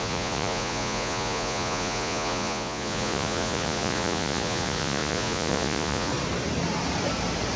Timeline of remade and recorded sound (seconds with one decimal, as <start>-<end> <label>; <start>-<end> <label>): 0.0-6.1 remade; 6.1-7.6 recorded